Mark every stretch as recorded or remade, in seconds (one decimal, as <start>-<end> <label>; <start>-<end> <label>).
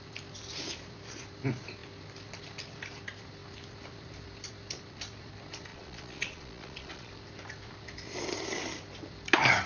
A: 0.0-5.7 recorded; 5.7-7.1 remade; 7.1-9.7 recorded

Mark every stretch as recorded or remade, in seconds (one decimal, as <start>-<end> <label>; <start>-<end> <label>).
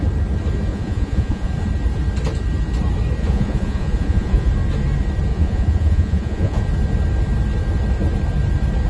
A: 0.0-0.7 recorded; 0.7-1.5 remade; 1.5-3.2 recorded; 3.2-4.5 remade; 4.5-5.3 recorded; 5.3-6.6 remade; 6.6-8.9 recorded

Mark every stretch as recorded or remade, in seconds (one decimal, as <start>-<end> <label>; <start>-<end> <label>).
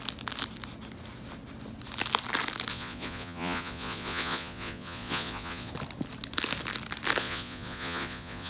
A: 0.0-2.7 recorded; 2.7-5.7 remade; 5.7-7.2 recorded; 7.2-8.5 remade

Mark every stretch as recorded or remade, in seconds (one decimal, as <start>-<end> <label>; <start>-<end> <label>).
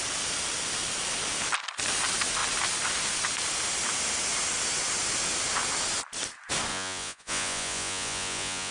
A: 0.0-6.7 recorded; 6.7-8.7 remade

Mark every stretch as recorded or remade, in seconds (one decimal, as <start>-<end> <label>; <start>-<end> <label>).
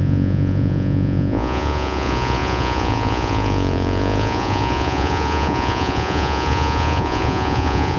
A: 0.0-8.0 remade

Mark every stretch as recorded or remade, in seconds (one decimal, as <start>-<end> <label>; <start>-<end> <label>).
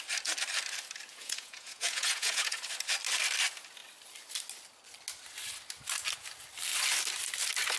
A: 0.0-1.1 recorded; 1.1-2.7 remade; 2.7-7.8 recorded